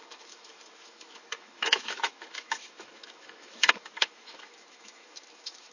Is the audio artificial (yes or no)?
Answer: yes